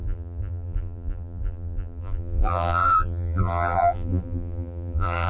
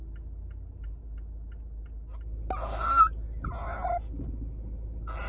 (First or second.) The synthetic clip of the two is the first